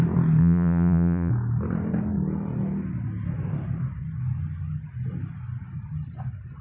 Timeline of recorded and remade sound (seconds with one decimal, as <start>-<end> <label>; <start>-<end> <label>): 0.0-0.4 recorded; 0.4-1.3 remade; 1.3-6.6 recorded